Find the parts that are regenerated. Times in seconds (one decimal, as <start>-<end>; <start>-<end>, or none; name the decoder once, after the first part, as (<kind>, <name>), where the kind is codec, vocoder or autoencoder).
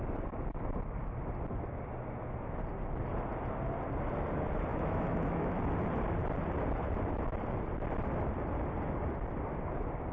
4.7-5.6 (autoencoder, DAC-VAE)